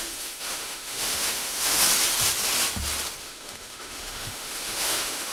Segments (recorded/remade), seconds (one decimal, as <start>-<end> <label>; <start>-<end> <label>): 0.0-1.8 remade; 1.8-3.2 recorded; 3.2-5.3 remade